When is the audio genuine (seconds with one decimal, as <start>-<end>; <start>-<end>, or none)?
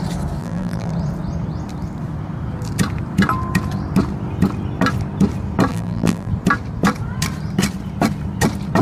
0.0-0.4; 0.9-5.7; 6.3-8.8